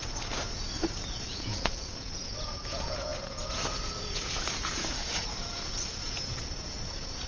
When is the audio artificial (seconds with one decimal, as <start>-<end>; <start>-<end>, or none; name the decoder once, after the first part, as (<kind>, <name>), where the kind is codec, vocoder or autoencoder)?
0.0-7.3 (vocoder, Vocos)